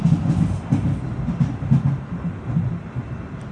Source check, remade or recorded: recorded